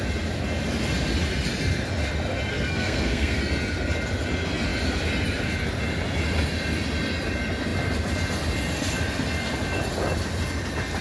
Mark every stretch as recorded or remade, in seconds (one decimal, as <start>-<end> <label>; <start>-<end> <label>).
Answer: 0.0-2.5 recorded; 2.5-3.4 remade; 3.4-11.0 recorded